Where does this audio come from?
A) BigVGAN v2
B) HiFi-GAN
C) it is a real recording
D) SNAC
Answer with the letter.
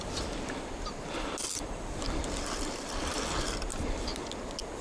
A